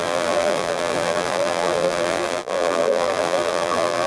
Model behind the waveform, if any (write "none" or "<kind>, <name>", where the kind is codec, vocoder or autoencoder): vocoder, BigVGAN v2